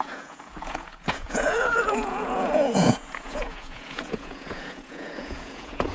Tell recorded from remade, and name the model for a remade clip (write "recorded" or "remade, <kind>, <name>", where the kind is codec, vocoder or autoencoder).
remade, vocoder, Vocos